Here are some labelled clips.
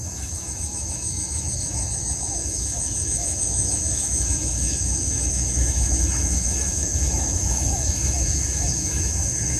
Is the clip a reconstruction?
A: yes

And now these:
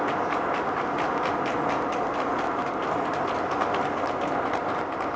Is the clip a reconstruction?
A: no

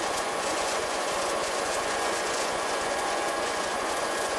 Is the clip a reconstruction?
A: yes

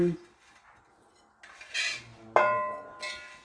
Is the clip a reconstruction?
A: no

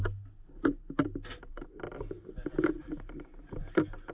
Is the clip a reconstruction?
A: no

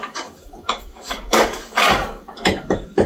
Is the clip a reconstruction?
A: yes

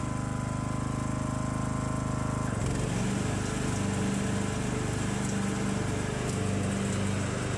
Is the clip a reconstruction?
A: no